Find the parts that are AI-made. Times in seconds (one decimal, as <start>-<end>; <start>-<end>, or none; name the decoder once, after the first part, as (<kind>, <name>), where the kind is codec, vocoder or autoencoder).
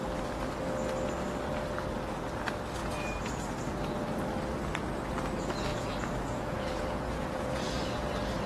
2.8-3.4 (vocoder, Vocos); 5.7-8.0